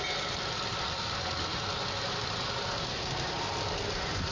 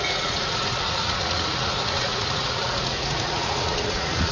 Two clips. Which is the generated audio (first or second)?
second